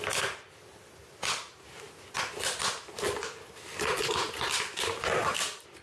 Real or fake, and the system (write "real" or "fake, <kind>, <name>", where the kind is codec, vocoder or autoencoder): real